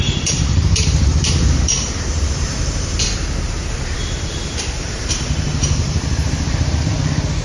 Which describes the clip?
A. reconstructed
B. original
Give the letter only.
A